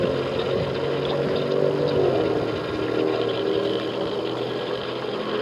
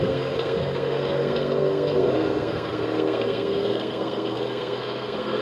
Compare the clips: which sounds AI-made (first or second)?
second